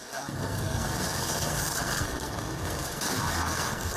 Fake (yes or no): yes